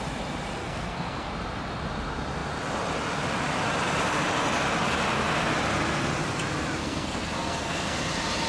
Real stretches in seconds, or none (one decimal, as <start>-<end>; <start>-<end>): 0.0-0.6; 1.3-6.8; 8.0-8.5